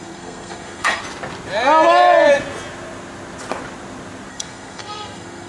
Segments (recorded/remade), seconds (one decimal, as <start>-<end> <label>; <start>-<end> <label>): 0.0-1.0 remade; 1.0-4.3 recorded; 4.3-5.5 remade

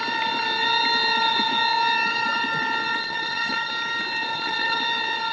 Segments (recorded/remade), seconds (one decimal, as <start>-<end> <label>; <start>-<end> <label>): 0.0-2.9 recorded; 2.9-3.7 remade; 3.7-4.3 recorded; 4.3-4.8 remade; 4.8-5.3 recorded